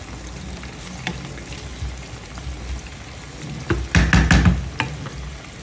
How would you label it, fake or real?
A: real